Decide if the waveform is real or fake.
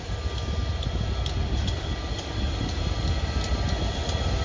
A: real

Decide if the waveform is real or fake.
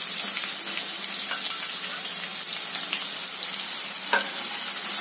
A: real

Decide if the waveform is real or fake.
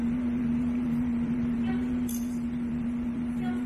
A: fake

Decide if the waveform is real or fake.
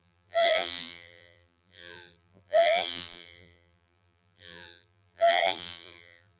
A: fake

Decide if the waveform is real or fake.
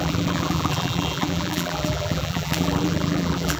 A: fake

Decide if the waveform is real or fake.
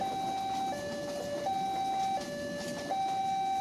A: real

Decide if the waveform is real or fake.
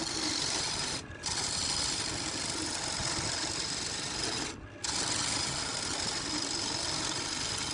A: real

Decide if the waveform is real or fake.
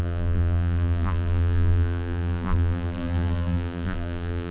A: fake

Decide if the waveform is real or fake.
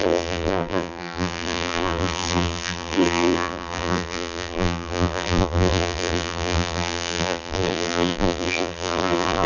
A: fake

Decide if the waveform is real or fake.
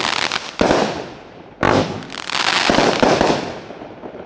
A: real